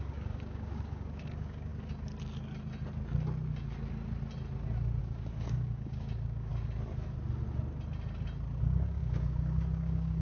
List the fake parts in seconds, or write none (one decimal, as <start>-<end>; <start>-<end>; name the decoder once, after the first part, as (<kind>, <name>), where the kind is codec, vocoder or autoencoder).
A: 0.0-1.7 (codec, DAC); 5.0-6.5; 8.6-10.2